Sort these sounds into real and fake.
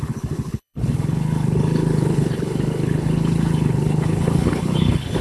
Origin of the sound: fake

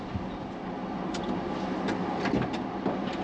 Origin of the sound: real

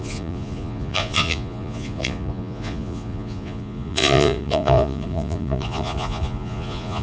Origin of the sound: fake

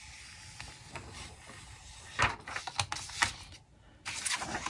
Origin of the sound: real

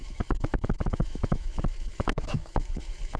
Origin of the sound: fake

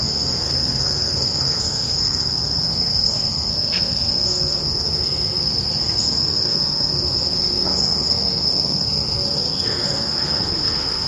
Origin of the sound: fake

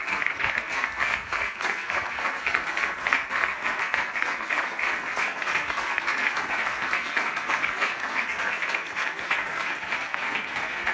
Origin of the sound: fake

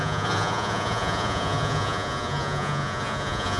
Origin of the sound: fake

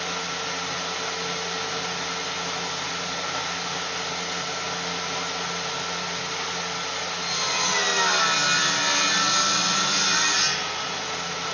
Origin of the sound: real